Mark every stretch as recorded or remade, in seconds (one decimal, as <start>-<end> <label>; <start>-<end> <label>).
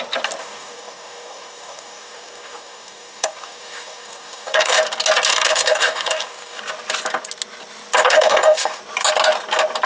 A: 0.0-0.4 recorded; 0.4-4.8 remade; 4.8-5.3 recorded; 5.3-6.6 remade; 6.6-8.0 recorded; 8.0-8.8 remade; 8.8-9.9 recorded